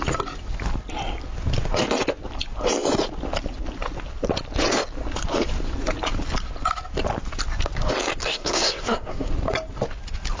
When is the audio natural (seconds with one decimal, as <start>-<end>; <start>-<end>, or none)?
0.0-8.2; 9.3-10.4